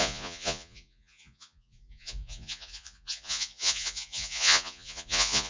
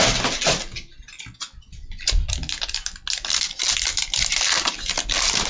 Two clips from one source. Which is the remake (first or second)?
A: first